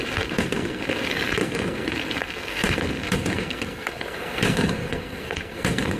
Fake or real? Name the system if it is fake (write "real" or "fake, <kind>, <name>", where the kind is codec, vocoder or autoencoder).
fake, codec, SNAC